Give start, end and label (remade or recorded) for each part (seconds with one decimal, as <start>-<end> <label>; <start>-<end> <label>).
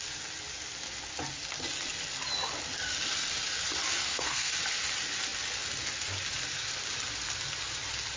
0.0-4.0 recorded; 4.0-4.5 remade; 4.5-8.2 recorded